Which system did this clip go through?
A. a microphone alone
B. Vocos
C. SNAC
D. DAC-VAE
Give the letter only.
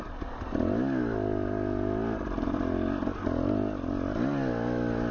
A